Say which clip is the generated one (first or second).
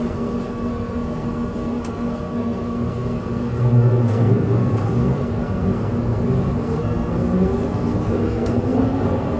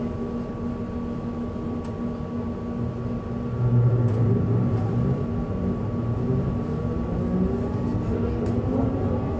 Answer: first